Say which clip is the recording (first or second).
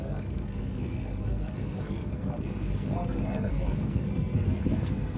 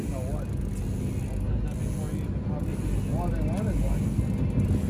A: second